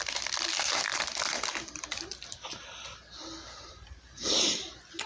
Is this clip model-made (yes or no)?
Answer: yes